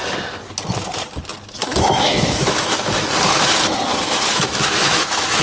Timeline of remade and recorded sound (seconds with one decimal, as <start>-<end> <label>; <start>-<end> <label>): 0.0-1.6 recorded; 1.6-3.0 remade; 3.0-3.9 recorded; 3.9-5.4 remade